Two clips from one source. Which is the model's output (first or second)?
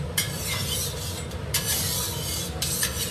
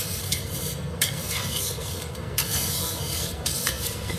second